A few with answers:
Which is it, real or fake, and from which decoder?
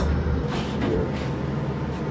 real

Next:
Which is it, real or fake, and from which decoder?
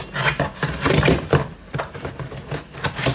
real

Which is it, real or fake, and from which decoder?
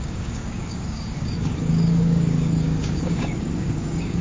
fake, codec, DAC